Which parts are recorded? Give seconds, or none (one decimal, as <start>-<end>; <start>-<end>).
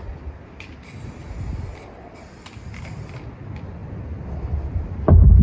0.0-5.4